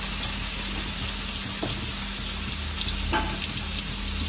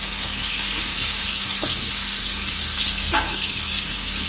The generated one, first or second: second